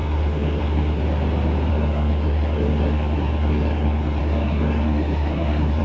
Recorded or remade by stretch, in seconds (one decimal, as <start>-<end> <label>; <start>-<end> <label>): 0.0-1.0 remade; 1.0-1.7 recorded; 1.7-5.8 remade